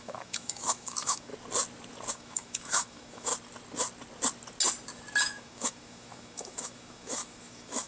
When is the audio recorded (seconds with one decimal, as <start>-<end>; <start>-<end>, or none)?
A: 1.3-2.1; 3.3-5.2